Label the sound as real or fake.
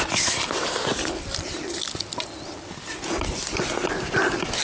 real